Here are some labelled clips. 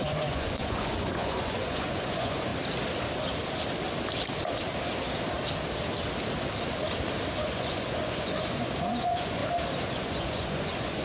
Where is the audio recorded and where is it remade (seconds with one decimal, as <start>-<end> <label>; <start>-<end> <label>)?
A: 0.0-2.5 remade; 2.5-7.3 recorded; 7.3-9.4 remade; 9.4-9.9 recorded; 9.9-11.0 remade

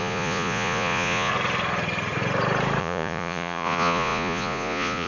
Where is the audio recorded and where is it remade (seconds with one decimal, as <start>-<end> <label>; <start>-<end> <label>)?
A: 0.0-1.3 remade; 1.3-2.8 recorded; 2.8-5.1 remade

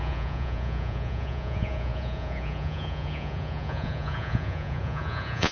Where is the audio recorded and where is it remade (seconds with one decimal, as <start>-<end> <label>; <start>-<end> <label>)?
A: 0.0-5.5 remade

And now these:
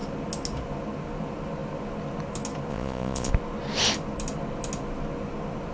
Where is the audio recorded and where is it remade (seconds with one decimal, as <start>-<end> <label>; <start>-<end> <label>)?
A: 0.0-2.7 recorded; 2.7-3.3 remade; 3.3-5.7 recorded

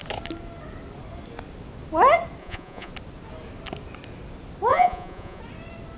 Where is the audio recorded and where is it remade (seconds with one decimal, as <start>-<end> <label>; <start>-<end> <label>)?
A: 0.0-2.4 recorded; 2.4-2.9 remade; 2.9-4.7 recorded; 4.7-5.4 remade; 5.4-6.0 recorded